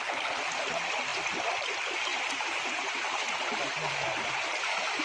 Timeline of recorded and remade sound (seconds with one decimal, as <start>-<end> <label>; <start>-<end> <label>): 0.0-2.1 recorded; 2.1-5.0 remade